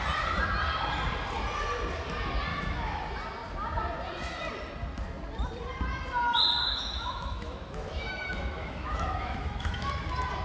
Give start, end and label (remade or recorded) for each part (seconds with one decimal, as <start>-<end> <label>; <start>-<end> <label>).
0.0-2.5 recorded; 2.5-3.0 remade; 3.0-6.6 recorded; 6.6-9.9 remade; 9.9-10.4 recorded